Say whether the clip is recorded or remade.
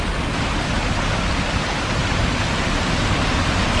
recorded